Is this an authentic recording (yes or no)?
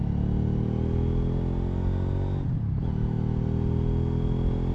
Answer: yes